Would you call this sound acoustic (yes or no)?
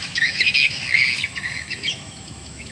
no